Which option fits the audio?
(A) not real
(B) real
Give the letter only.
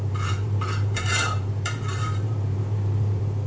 A